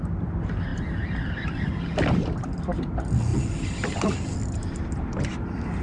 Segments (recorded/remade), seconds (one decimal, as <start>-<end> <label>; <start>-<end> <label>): 0.0-5.8 recorded

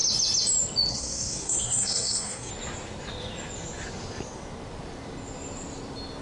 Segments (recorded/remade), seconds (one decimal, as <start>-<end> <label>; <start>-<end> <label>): 0.0-0.9 recorded; 0.9-2.5 remade; 2.5-6.2 recorded

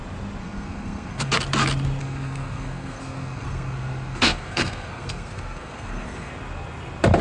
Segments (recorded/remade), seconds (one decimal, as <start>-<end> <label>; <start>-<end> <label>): 0.0-0.4 recorded; 0.4-1.3 remade; 1.3-2.0 recorded; 2.0-6.3 remade; 6.3-7.2 recorded

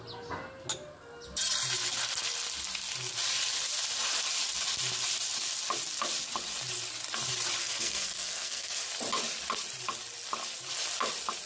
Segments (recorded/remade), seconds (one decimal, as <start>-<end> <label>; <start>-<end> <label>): 0.0-7.6 recorded; 7.6-8.8 remade; 8.8-11.5 recorded

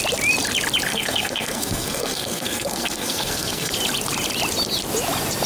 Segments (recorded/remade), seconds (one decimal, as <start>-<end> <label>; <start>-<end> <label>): 0.0-0.9 recorded; 0.9-3.7 remade; 3.7-5.5 recorded